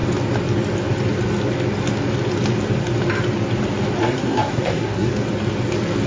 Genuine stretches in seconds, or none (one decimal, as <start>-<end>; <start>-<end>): 0.0-4.0; 5.1-6.1